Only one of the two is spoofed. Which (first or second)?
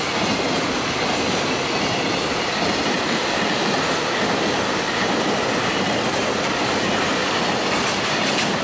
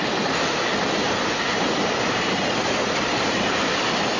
second